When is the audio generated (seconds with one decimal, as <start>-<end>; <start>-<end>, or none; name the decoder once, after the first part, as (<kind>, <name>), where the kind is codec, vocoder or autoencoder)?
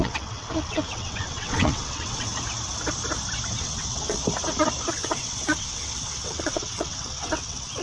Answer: 0.0-2.3 (vocoder, WaveNeXt); 3.6-4.2; 4.9-7.8